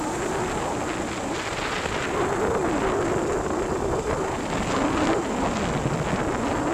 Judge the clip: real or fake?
real